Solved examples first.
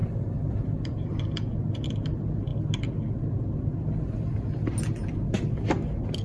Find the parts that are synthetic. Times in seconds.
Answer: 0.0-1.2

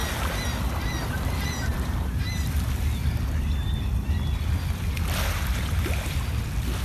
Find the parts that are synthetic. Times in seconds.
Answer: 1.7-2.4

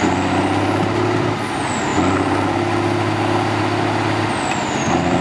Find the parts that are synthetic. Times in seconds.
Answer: none